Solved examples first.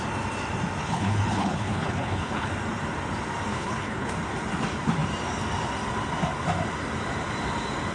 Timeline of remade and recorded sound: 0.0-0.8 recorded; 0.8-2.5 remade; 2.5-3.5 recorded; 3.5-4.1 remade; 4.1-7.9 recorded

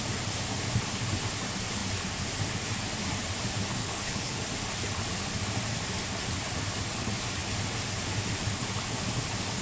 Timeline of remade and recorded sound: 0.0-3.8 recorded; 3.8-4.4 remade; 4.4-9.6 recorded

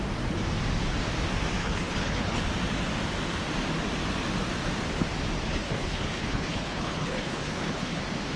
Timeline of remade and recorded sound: 0.0-1.6 recorded; 1.6-2.4 remade; 2.4-5.5 recorded; 5.5-8.0 remade; 8.0-8.4 recorded

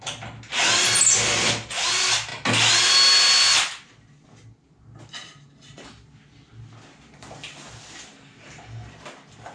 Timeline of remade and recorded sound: 0.0-9.5 recorded